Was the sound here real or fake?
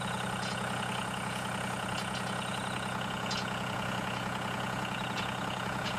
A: fake